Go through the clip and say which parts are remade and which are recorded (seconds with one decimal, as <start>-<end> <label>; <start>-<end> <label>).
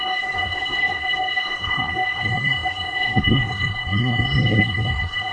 0.0-5.3 remade